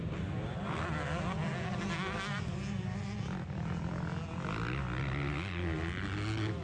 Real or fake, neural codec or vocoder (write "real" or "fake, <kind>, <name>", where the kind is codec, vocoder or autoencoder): real